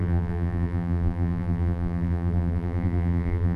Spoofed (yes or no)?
yes